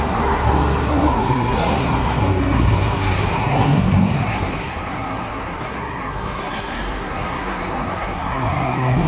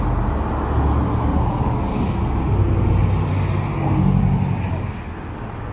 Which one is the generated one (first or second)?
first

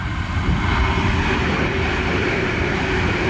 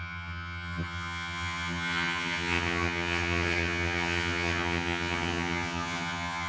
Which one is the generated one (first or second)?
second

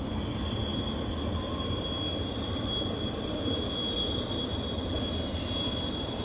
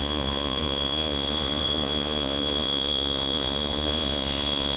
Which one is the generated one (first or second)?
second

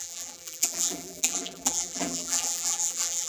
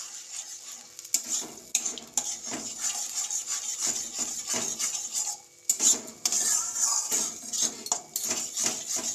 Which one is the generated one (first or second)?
first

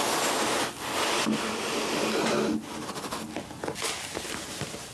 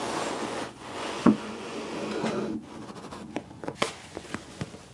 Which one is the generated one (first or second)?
second